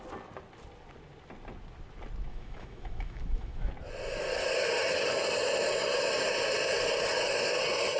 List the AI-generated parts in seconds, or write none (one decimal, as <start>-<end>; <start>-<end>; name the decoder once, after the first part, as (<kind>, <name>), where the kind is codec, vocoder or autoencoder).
2.3-3.7 (autoencoder, DAC-VAE)